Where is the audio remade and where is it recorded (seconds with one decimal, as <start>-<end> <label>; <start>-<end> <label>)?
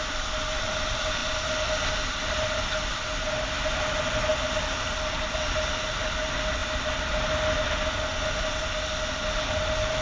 0.0-10.0 recorded